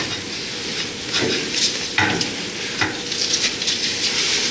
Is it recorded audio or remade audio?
recorded